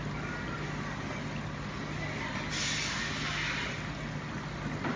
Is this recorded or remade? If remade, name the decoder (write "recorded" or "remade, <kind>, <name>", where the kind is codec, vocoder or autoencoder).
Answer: recorded